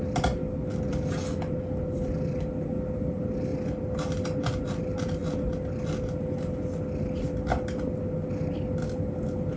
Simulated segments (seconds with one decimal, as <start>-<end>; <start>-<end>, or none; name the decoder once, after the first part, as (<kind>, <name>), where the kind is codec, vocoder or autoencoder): none